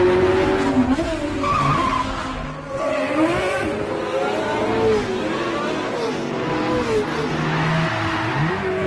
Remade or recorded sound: recorded